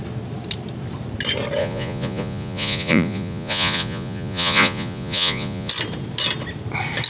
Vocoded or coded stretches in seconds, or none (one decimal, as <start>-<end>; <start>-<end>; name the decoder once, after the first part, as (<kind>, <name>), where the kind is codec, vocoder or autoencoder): 1.6-5.7 (vocoder, Vocos)